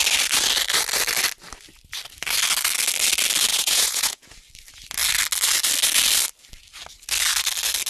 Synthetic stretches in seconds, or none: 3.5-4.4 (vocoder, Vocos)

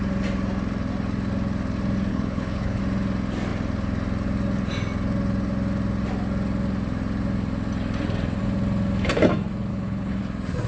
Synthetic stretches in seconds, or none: 2.1-2.8 (codec, HILCodec); 9.7-10.2

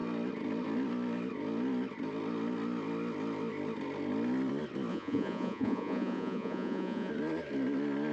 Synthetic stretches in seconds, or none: 4.9-7.1 (vocoder, Vocos)

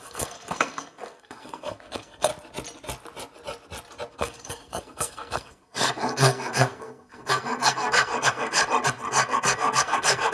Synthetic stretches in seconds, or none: 0.0-2.3 (codec, SNAC); 4.1-8.6; 9.1-10.3

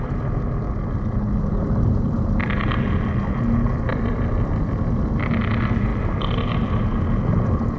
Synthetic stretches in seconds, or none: 3.9-4.7 (vocoder, BigVGAN v2); 5.9-6.8